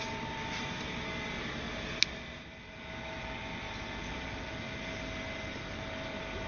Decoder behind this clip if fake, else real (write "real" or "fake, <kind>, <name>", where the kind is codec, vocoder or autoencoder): real